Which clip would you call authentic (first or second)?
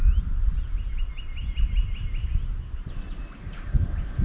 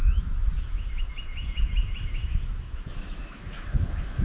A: first